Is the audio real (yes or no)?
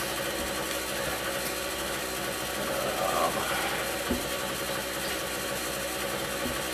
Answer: yes